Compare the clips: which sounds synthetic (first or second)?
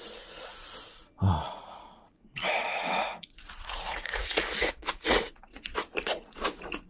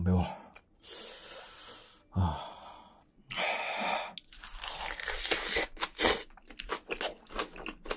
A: first